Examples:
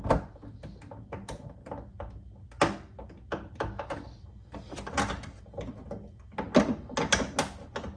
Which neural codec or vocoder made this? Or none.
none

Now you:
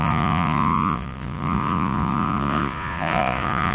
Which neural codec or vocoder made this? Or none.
vocoder, Vocos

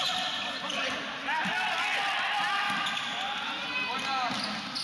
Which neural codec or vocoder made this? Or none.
none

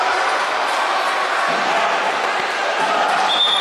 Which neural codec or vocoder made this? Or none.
none